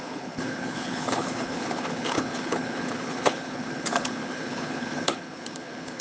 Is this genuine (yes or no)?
no